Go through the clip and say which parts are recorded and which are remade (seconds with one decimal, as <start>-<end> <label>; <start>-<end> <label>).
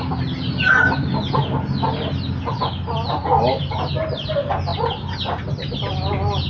0.0-6.5 recorded